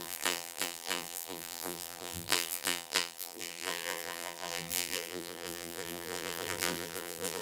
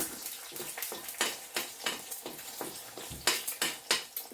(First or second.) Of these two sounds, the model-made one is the first